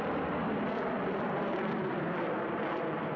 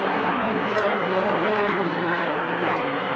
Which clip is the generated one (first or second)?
second